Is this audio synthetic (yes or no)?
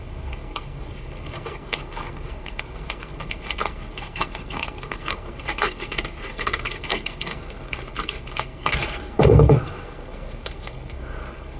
yes